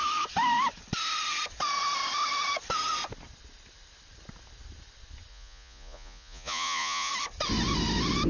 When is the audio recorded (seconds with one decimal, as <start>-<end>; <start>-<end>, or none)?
0.0-5.3; 7.1-8.3